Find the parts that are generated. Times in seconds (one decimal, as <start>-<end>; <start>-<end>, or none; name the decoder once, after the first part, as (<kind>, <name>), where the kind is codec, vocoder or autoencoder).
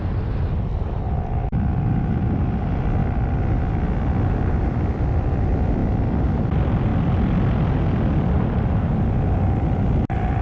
none